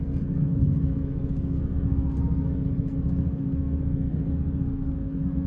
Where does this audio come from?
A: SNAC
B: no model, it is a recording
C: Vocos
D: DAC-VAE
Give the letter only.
A